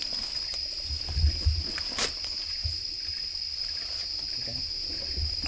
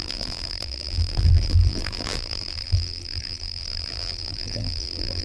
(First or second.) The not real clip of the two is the second